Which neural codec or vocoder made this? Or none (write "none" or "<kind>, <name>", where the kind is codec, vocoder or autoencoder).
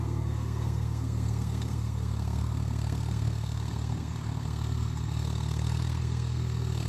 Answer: codec, SNAC